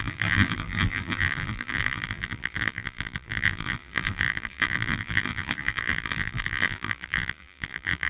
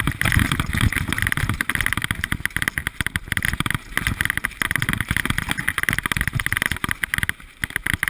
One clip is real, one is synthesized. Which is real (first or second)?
second